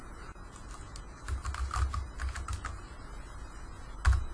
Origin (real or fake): real